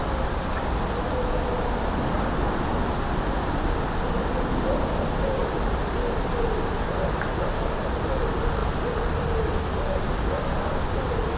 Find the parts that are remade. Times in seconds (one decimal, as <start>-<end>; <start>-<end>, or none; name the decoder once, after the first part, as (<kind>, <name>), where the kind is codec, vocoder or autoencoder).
5.4-7.5 (vocoder, BigVGAN v2); 8.6-9.2